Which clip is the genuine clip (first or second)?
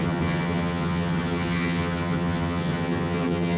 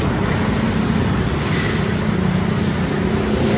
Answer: second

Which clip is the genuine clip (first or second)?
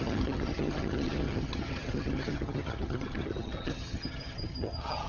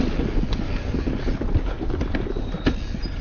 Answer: second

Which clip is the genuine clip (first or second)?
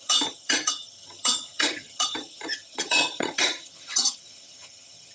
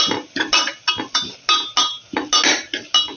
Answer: second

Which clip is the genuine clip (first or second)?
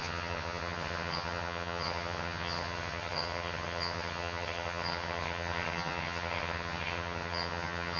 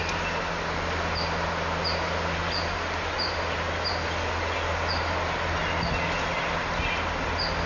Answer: second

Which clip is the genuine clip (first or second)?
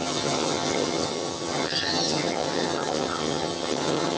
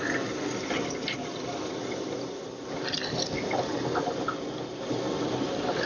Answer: second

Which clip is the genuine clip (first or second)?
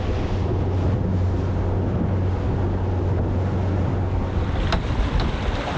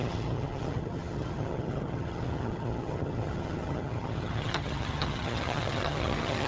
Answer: first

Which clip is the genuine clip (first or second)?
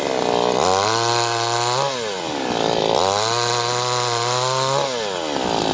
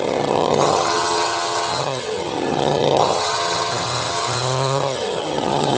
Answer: first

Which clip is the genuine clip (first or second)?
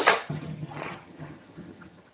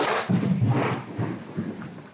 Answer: second